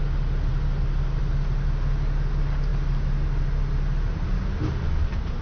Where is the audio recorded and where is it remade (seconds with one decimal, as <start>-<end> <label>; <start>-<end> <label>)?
0.0-5.4 recorded